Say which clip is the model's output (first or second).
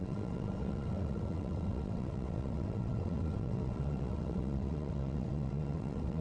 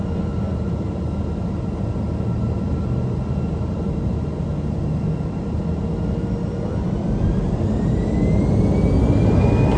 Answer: first